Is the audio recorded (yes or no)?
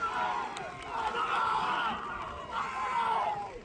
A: yes